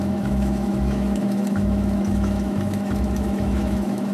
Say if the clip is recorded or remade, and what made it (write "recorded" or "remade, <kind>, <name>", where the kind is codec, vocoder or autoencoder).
remade, autoencoder, DAC-VAE